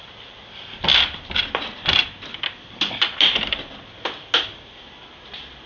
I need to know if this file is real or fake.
real